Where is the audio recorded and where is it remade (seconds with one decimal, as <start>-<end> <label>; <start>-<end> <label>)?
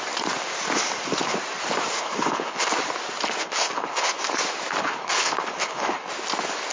0.0-2.0 recorded; 2.0-2.7 remade; 2.7-3.4 recorded; 3.4-4.2 remade; 4.2-4.8 recorded; 4.8-6.1 remade; 6.1-6.7 recorded